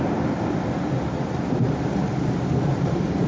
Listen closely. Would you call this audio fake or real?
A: real